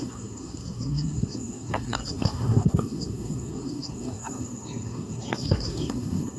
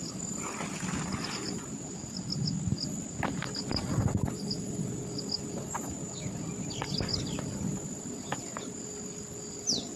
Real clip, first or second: second